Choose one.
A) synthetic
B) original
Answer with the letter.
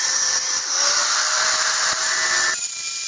A